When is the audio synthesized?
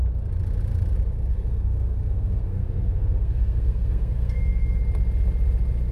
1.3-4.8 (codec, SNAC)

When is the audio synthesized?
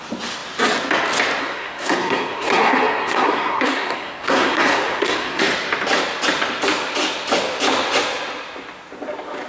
1.4-5.4 (codec, SNAC)